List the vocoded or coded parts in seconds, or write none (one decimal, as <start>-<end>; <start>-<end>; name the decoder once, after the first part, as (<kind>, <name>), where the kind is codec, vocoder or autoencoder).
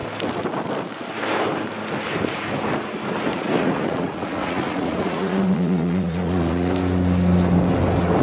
3.3-6.7 (vocoder, Vocos)